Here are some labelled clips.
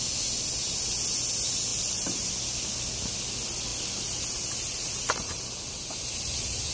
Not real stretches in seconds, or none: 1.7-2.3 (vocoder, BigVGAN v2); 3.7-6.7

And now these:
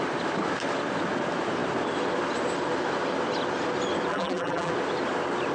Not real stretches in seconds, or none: 4.1-4.7 (vocoder, BigVGAN v2)

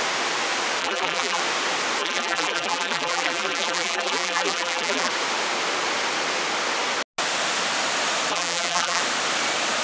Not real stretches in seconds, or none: 0.8-1.4 (vocoder, BigVGAN v2); 2.0-5.1; 8.3-9.0

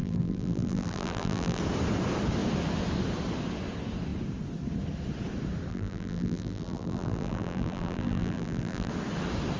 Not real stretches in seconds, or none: 0.0-1.6 (vocoder, BigVGAN v2); 5.7-8.9

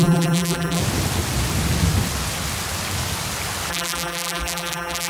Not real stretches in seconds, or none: 0.0-0.8 (vocoder, BigVGAN v2); 3.7-5.1

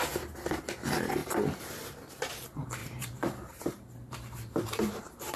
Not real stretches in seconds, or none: 2.8-5.0 (vocoder, BigVGAN v2)

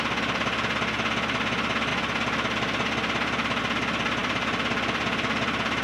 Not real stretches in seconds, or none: 4.2-5.8 (vocoder, BigVGAN v2)

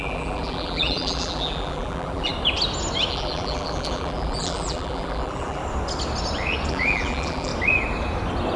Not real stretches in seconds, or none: 0.0-2.3 (vocoder, BigVGAN v2); 3.1-5.6; 6.7-7.5